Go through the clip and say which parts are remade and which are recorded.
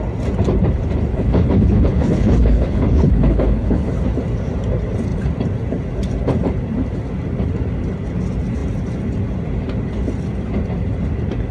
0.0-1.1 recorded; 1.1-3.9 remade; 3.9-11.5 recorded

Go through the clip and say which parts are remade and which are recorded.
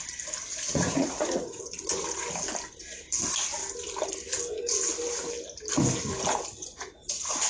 0.0-0.5 recorded; 0.5-1.6 remade; 1.6-6.6 recorded; 6.6-7.5 remade